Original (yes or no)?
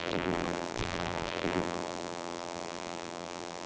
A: no